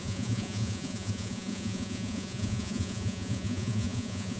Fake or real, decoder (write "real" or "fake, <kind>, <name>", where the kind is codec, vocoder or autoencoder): fake, vocoder, Vocos